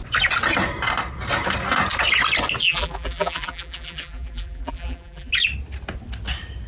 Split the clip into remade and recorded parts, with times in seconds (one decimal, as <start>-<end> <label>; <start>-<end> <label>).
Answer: 0.0-2.6 recorded; 2.6-5.3 remade; 5.3-6.7 recorded